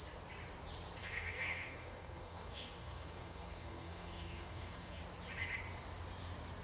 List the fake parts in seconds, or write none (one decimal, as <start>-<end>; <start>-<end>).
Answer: 1.0-5.0

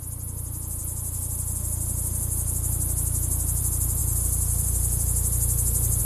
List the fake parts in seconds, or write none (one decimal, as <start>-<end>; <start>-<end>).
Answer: 4.0-6.0

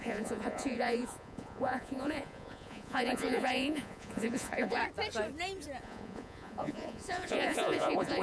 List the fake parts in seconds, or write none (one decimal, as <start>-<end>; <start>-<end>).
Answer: 0.0-4.8; 5.8-8.2

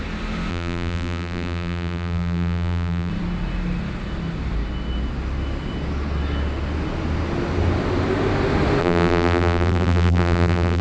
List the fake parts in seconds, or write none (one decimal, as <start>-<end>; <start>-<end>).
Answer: 0.5-3.1; 8.8-10.8

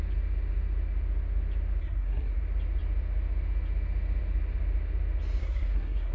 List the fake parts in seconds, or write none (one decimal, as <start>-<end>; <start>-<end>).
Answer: 1.8-2.4; 5.4-6.1

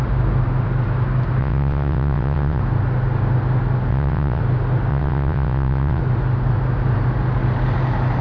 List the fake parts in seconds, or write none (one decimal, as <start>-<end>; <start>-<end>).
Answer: 1.4-2.6; 3.9-4.4; 4.9-6.0

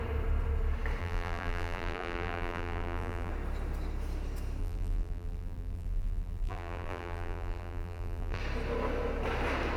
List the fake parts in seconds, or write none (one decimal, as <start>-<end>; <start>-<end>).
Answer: 1.0-3.3; 4.6-8.4